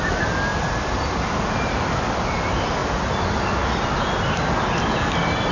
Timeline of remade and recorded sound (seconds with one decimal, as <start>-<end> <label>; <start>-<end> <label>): 0.0-5.5 recorded